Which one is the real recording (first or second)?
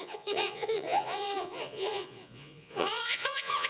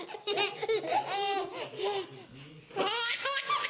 second